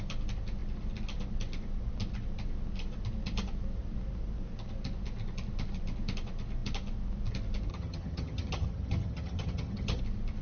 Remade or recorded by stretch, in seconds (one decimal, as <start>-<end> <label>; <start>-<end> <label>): 0.0-7.7 recorded; 7.7-10.0 remade; 10.0-10.4 recorded

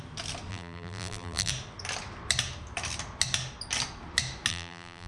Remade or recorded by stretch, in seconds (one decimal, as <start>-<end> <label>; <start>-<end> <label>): 0.0-0.5 recorded; 0.5-1.5 remade; 1.5-4.5 recorded; 4.5-5.1 remade